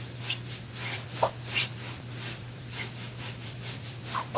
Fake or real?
fake